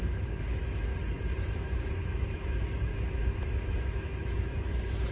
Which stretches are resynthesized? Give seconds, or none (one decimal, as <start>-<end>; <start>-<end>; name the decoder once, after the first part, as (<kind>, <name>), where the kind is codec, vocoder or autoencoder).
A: 0.0-0.9 (autoencoder, DAC-VAE); 1.5-5.1